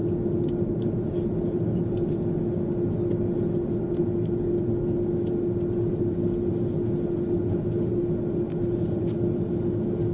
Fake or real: real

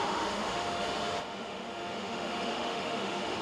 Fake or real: fake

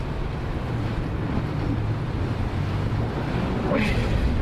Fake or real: fake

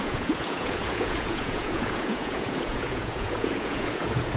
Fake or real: fake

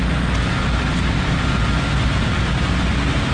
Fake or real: real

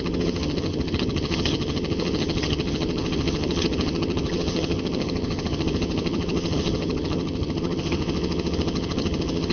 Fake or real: fake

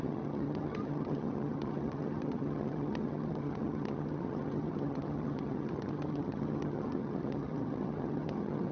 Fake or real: fake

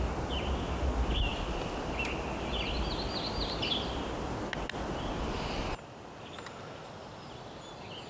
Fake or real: real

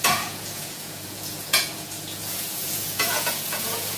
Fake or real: fake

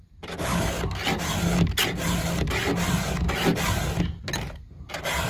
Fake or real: real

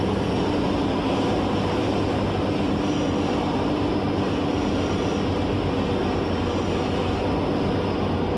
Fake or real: real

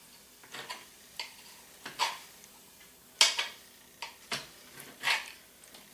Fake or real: real